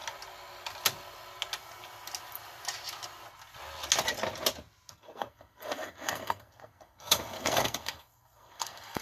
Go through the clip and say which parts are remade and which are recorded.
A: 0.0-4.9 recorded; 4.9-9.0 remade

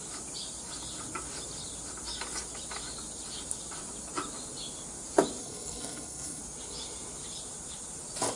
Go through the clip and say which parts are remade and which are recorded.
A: 0.0-5.4 recorded; 5.4-6.4 remade; 6.4-8.4 recorded

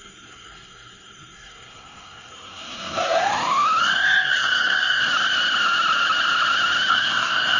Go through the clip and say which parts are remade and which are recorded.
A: 0.0-3.3 remade; 3.3-3.8 recorded; 3.8-5.1 remade; 5.1-6.9 recorded; 6.9-7.6 remade